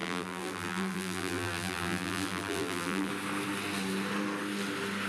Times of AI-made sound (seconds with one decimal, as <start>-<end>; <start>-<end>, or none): 0.0-3.1